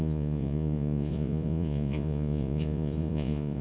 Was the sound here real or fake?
fake